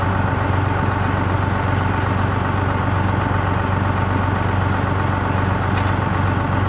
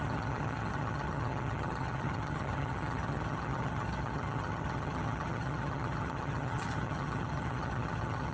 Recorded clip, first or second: first